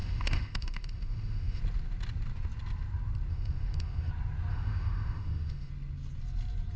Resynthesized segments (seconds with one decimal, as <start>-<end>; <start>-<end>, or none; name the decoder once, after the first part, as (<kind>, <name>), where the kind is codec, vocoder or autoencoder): 0.0-1.6 (autoencoder, DAC-VAE); 3.3-4.1; 4.5-5.7